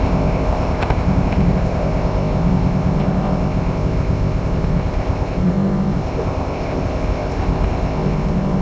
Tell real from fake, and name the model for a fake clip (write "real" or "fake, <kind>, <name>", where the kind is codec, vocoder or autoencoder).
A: fake, codec, ZipCodec